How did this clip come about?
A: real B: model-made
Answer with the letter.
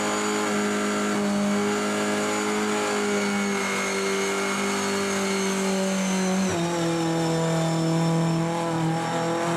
A